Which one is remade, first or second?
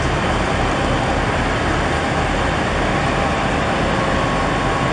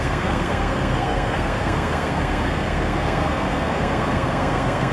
second